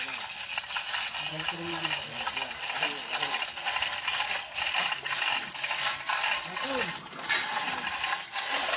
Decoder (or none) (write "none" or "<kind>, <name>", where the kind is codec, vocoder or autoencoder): none